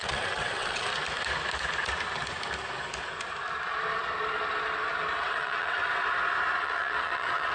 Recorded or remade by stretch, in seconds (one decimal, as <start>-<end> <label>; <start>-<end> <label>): 0.0-0.9 remade; 0.9-5.2 recorded; 5.2-5.8 remade; 5.8-6.6 recorded; 6.6-7.5 remade